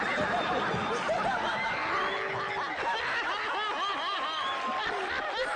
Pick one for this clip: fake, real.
real